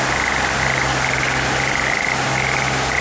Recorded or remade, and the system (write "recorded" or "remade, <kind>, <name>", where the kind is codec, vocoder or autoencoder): recorded